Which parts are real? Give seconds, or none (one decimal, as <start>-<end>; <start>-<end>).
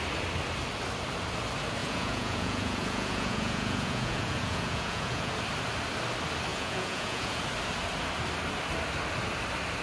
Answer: 0.0-1.8; 5.3-6.5; 7.4-9.8